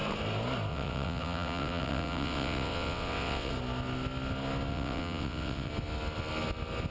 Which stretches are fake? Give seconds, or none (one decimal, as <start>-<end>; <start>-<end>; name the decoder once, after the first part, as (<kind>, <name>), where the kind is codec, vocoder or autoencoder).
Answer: 0.7-3.5 (vocoder, WaveNeXt); 4.7-5.7